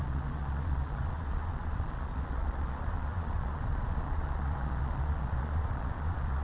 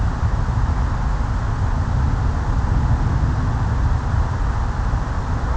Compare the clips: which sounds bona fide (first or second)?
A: second